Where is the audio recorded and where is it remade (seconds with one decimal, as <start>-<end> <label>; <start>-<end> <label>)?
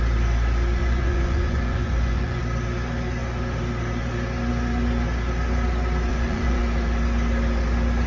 0.0-0.8 recorded; 0.8-2.4 remade; 2.4-6.1 recorded; 6.1-6.6 remade; 6.6-8.1 recorded